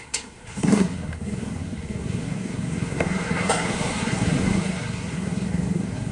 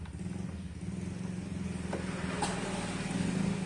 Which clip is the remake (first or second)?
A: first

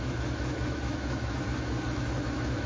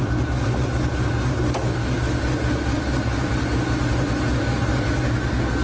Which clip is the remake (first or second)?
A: first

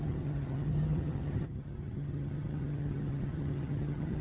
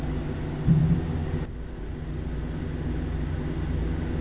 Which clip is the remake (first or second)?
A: first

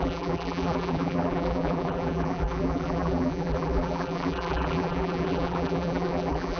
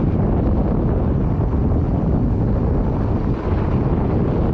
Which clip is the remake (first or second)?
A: first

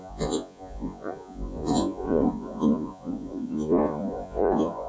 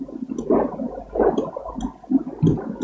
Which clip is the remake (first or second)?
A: first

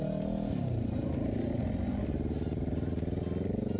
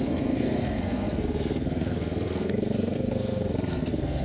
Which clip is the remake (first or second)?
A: second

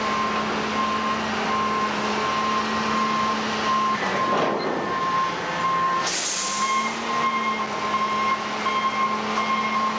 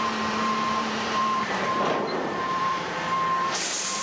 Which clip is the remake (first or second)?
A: second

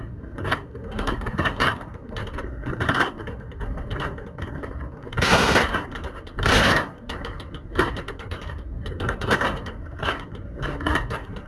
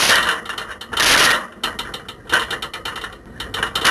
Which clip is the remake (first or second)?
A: first